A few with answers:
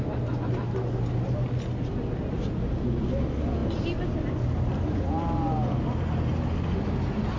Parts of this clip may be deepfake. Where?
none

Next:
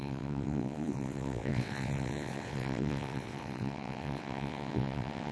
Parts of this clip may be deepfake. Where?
0.0-5.3

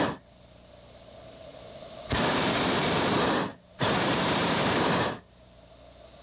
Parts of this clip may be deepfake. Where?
3.5-5.7

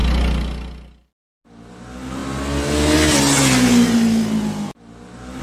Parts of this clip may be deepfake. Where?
none

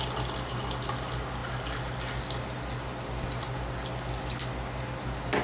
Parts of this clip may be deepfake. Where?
none

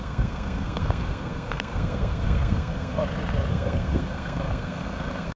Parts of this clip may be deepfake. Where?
0.0-3.0; 3.5-5.4

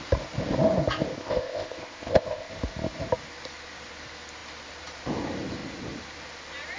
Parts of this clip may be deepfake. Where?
1.2-2.5